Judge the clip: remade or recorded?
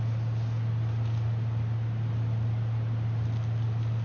recorded